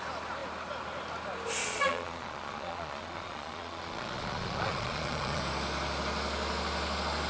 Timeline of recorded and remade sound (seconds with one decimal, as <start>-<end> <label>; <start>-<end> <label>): 0.0-1.6 recorded; 1.6-5.4 remade; 5.4-7.3 recorded